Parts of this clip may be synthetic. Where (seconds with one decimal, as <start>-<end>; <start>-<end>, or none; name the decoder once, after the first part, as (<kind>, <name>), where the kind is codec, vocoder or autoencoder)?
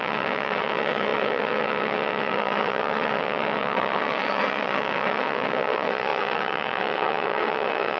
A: 0.0-8.0 (vocoder, WaveNeXt)